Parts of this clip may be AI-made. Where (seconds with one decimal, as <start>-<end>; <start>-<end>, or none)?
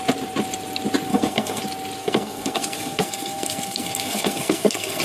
1.1-1.6; 2.0-5.0